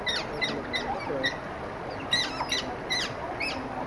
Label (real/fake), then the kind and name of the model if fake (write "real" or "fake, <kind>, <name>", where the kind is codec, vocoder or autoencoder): real